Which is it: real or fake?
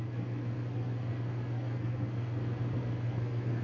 fake